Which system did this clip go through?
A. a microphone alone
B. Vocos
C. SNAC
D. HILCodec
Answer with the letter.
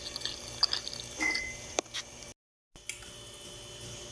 A